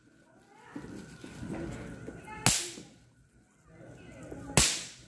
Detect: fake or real real